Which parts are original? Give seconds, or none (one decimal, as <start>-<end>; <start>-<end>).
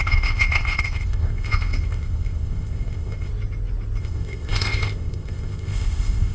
3.3-4.0